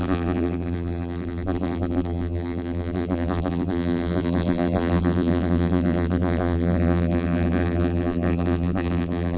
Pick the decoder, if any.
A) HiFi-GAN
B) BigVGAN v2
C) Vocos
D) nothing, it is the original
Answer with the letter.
B